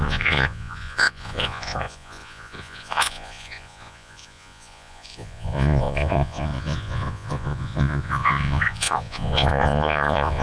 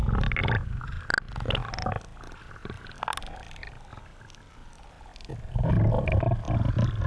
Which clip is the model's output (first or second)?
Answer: first